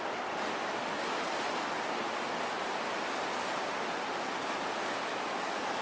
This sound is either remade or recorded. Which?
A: recorded